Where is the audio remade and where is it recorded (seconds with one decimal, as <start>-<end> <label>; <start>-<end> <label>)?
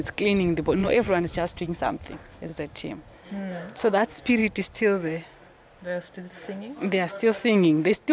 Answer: 0.0-0.8 recorded; 0.8-1.8 remade; 1.8-8.1 recorded